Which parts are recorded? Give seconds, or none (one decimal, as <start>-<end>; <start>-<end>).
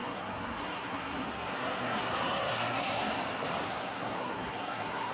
3.1-3.6